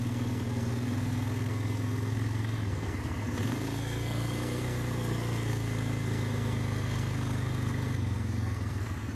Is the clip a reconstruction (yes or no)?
yes